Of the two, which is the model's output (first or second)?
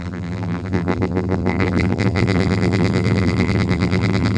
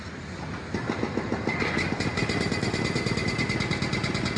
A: first